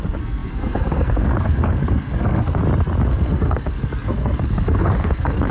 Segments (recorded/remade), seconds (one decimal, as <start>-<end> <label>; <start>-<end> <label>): 0.0-2.6 remade; 2.6-3.1 recorded; 3.1-5.5 remade